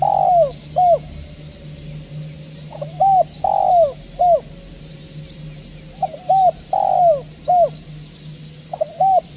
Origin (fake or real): real